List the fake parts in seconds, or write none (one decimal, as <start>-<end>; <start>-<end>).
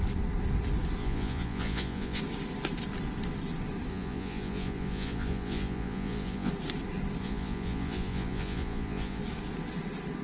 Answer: 1.0-2.2; 3.9-6.5; 7.2-9.2